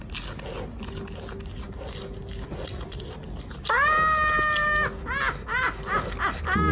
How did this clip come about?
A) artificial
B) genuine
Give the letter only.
B